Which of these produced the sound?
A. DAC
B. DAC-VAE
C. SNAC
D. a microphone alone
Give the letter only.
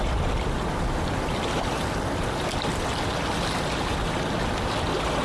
D